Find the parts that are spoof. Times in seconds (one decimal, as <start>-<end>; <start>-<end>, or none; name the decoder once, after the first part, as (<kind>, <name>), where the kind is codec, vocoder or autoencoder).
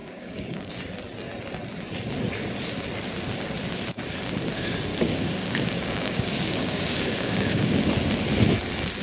0.0-0.7 (codec, DAC); 4.9-7.9